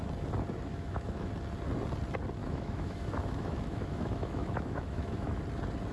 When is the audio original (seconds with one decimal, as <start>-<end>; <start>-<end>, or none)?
0.0-0.7; 1.3-2.4; 5.4-5.9